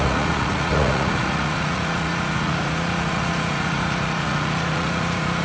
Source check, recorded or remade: remade